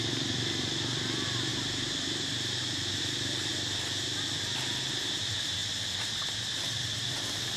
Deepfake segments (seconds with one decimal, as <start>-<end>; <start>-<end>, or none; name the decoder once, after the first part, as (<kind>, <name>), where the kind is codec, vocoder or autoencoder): 0.0-1.5 (vocoder, BigVGAN v2); 3.0-3.5; 4.9-5.6; 6.2-7.6